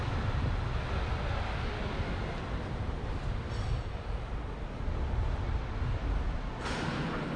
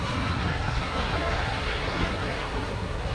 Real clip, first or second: first